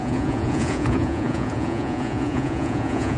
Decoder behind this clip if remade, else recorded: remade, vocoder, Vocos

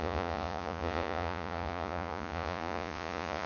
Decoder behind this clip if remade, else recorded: remade, vocoder, Vocos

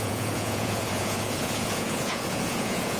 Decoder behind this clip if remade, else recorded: remade, vocoder, Vocos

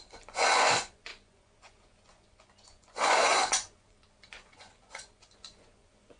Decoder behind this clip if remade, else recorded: remade, vocoder, Vocos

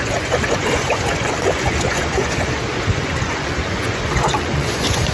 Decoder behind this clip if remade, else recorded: remade, vocoder, Vocos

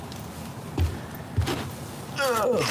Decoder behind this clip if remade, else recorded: recorded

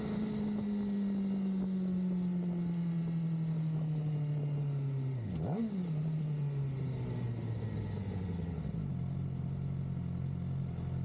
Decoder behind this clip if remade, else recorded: recorded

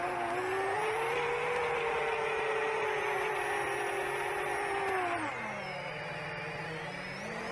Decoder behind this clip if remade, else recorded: recorded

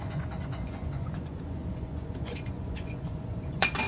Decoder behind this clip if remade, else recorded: remade, vocoder, Vocos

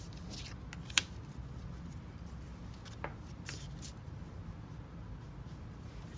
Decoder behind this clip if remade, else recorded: recorded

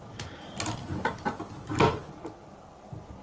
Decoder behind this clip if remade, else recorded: recorded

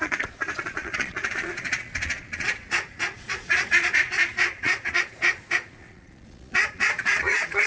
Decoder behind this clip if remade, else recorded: remade, vocoder, Vocos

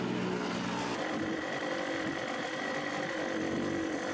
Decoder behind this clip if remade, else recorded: recorded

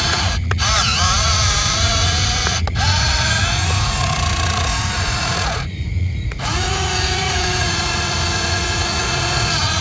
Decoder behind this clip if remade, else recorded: remade, vocoder, Vocos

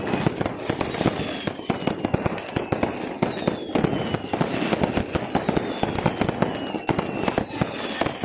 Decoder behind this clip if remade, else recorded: recorded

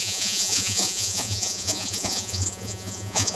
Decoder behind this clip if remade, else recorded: remade, vocoder, Vocos